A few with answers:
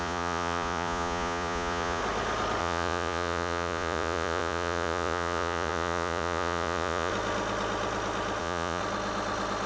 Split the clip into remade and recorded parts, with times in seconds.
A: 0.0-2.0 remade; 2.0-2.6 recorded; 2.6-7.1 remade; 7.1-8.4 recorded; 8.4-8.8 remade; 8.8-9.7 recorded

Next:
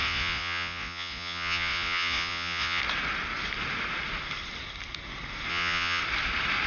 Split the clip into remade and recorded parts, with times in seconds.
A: 0.0-2.8 remade; 2.8-5.5 recorded; 5.5-6.0 remade; 6.0-6.7 recorded

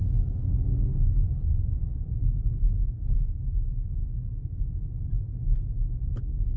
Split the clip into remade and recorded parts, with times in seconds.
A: 0.0-6.6 recorded